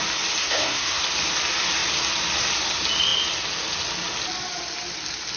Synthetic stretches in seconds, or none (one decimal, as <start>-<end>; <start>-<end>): 0.4-1.0